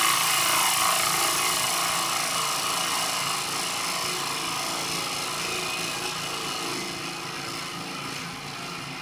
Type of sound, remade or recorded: recorded